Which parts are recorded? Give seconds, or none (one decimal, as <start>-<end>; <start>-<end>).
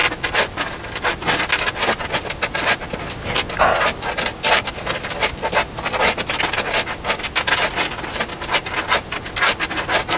0.0-10.2